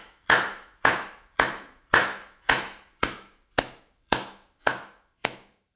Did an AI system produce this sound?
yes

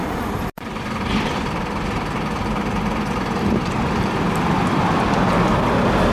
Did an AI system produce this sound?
no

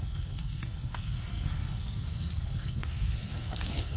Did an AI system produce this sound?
yes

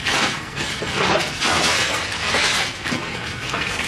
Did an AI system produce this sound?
yes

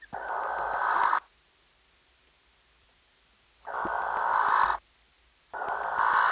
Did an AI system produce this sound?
no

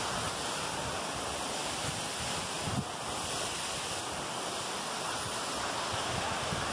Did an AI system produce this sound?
no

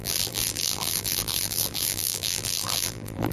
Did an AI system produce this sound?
yes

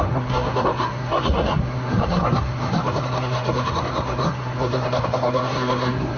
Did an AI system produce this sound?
yes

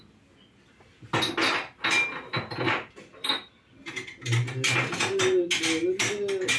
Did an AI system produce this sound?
no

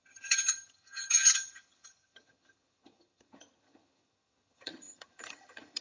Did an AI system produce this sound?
yes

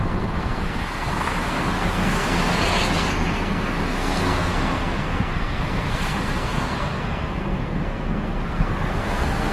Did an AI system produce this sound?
yes